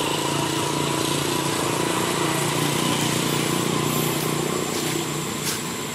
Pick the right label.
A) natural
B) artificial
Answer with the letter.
A